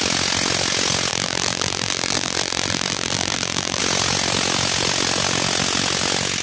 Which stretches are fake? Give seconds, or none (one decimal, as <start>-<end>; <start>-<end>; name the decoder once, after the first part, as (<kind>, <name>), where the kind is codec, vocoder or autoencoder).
1.1-3.8 (vocoder, BigVGAN v2)